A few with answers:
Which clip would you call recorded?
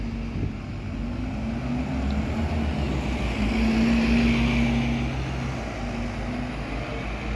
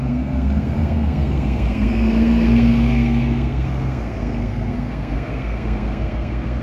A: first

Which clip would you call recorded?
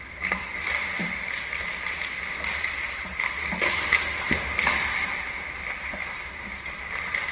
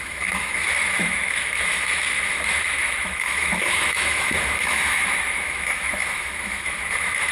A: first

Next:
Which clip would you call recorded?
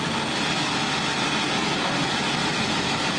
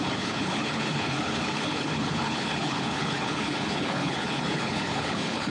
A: first